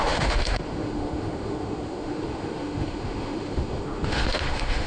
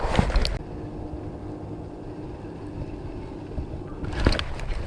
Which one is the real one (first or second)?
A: second